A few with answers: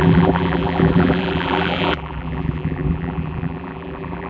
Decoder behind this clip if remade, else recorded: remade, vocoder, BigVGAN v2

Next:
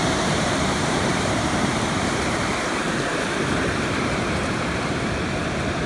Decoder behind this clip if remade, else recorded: remade, vocoder, BigVGAN v2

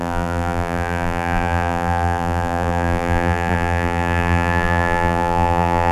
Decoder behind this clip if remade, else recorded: remade, vocoder, BigVGAN v2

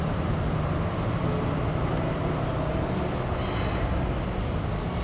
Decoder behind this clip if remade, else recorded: recorded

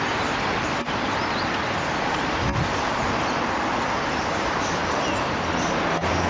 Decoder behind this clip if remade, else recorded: recorded